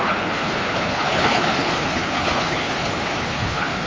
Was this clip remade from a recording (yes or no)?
yes